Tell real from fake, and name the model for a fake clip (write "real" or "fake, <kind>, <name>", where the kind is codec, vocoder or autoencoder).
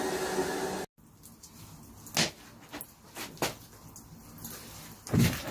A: real